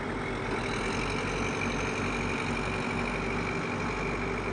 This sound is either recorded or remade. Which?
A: recorded